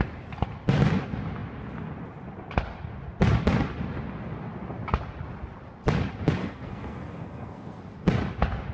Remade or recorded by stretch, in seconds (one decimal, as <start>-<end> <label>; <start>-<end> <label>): 0.0-6.4 recorded; 6.4-7.8 remade; 7.8-8.7 recorded